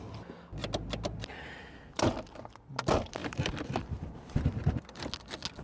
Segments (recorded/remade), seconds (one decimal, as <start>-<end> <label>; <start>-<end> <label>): 0.0-3.2 recorded; 3.2-5.1 remade; 5.1-5.6 recorded